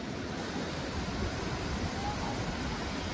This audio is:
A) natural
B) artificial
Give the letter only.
A